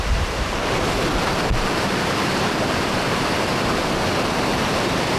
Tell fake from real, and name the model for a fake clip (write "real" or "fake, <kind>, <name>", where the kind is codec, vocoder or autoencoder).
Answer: fake, vocoder, BigVGAN v2